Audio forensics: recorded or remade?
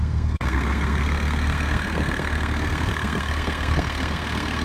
remade